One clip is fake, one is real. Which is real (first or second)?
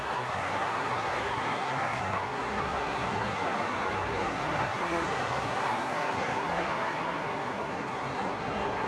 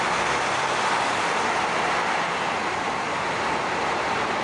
second